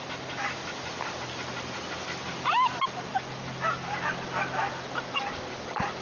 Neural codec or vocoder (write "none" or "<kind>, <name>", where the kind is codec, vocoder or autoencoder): none